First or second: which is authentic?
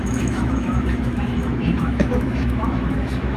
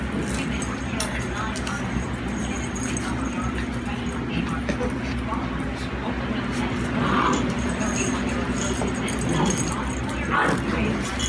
second